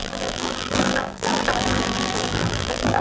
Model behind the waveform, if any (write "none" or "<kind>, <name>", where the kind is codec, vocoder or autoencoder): vocoder, BigVGAN v2